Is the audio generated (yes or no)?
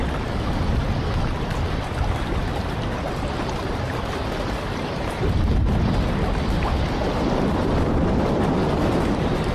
no